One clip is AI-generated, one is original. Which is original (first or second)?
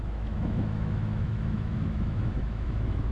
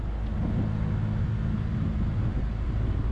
second